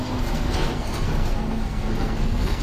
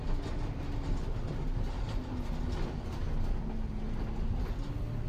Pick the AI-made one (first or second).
first